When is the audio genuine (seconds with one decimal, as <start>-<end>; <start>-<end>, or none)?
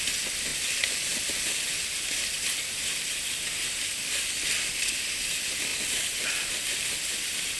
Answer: 0.0-7.6